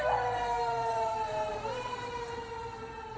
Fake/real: real